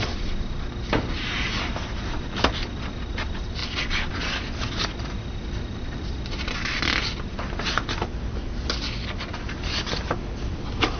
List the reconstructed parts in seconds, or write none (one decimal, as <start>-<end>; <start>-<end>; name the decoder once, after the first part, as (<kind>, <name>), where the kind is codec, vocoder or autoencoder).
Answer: none

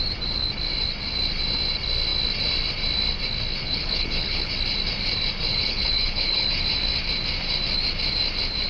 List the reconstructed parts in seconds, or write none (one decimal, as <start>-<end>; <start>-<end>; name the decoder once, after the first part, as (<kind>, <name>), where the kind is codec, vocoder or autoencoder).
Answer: 3.6-4.5 (codec, HILCodec); 5.5-6.5

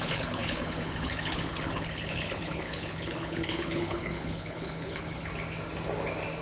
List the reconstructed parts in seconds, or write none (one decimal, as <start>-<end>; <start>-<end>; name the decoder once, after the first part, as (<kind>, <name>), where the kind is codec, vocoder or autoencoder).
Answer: 0.0-5.3 (codec, HILCodec)

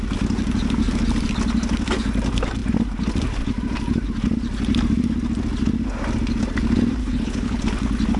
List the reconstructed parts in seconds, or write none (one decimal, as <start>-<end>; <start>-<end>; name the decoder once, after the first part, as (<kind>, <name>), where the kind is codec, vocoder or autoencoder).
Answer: 7.0-7.6 (codec, HILCodec)

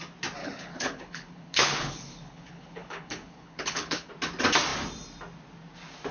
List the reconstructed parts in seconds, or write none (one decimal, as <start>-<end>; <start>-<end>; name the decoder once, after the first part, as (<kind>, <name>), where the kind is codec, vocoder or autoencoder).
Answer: 0.4-4.1 (codec, HILCodec)

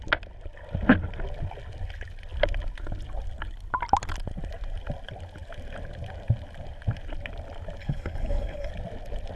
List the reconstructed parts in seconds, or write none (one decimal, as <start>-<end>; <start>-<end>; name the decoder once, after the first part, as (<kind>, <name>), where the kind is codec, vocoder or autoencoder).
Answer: 7.8-8.7 (codec, HILCodec)

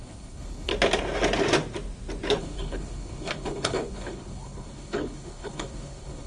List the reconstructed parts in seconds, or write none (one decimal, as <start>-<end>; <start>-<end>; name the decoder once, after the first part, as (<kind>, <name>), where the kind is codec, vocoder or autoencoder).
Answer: 0.0-0.7 (codec, HILCodec); 2.4-6.3

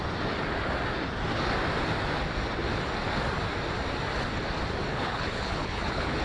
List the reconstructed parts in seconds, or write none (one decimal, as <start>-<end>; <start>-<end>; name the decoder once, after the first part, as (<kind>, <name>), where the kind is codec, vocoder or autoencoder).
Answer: 4.9-6.2 (codec, HILCodec)